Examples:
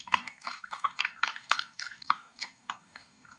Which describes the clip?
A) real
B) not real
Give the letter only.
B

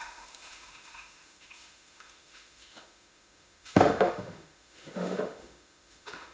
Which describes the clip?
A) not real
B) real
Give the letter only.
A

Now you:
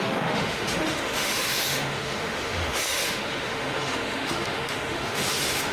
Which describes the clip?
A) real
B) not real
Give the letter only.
B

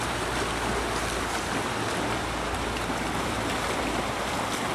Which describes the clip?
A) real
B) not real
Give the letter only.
A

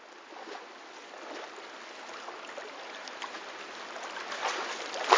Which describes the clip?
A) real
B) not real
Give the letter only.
A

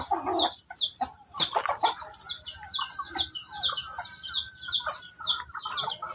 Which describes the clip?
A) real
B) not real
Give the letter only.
A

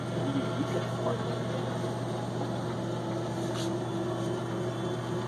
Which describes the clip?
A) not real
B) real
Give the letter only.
B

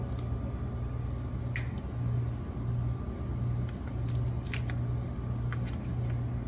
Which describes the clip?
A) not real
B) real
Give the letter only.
B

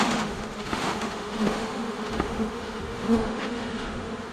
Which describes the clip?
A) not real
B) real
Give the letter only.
A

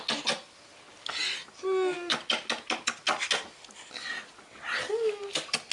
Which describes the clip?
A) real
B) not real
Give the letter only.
A